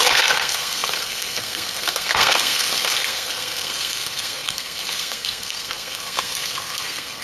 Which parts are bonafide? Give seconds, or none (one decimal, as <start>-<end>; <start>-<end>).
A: none